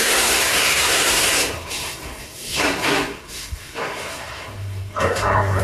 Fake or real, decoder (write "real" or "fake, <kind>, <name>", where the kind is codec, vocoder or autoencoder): fake, codec, SNAC